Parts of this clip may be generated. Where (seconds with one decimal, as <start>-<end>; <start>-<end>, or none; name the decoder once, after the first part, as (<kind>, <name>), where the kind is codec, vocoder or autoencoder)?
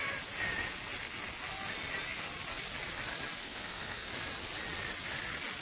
3.4-4.1 (codec, SNAC)